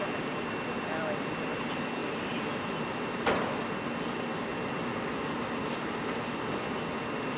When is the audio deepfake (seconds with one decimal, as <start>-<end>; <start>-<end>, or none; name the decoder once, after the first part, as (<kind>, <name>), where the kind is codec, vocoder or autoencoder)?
none